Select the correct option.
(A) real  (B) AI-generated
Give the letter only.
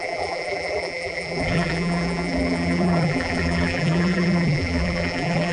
B